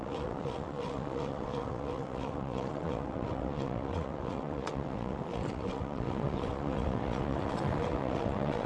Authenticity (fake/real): fake